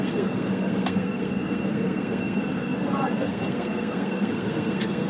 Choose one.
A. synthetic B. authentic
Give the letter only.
A